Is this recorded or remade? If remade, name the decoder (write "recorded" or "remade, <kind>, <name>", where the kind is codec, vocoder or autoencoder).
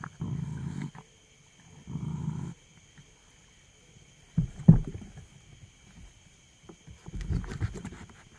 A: recorded